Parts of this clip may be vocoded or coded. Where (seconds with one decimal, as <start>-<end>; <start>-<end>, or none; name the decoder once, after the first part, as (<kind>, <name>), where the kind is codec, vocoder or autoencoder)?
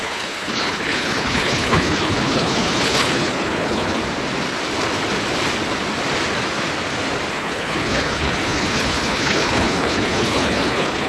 0.0-4.0 (codec, HILCodec); 7.3-11.1